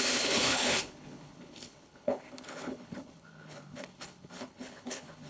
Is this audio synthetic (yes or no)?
yes